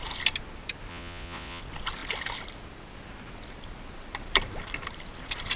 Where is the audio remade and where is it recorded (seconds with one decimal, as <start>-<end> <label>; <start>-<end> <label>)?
0.0-0.9 recorded; 0.9-1.6 remade; 1.6-5.6 recorded